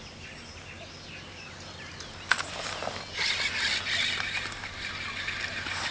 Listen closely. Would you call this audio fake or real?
real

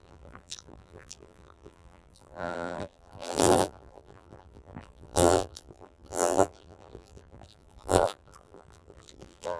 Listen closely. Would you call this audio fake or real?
fake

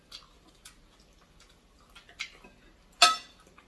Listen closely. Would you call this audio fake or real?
real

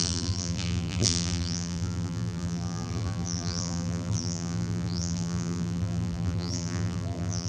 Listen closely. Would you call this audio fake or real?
fake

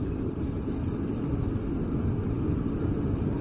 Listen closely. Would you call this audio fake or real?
real